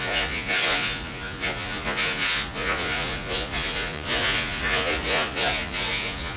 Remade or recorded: remade